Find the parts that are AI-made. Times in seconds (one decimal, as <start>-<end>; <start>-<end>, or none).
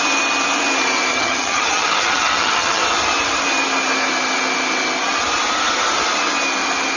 1.1-2.8